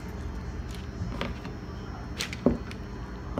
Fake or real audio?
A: real